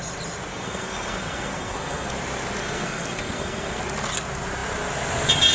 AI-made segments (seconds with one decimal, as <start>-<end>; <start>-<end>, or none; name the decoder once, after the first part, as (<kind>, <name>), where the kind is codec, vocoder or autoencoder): 0.5-2.1 (codec, SNAC); 2.6-3.8